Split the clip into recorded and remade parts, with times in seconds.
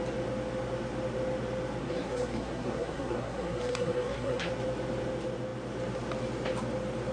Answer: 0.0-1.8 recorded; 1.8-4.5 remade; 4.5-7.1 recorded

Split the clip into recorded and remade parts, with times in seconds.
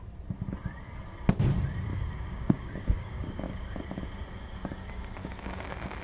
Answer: 0.0-1.9 recorded; 1.9-3.8 remade; 3.8-5.2 recorded; 5.2-6.0 remade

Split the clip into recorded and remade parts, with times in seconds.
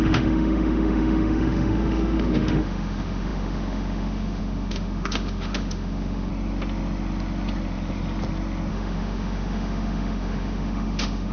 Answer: 0.0-6.3 remade; 6.3-8.7 recorded; 8.7-11.3 remade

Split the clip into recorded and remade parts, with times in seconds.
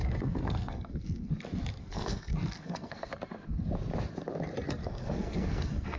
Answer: 0.0-1.3 remade; 1.3-1.8 recorded; 1.8-3.1 remade; 3.1-4.8 recorded; 4.8-6.0 remade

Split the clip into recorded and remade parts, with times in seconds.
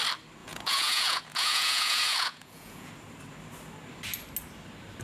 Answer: 0.0-0.4 recorded; 0.4-2.9 remade; 2.9-5.0 recorded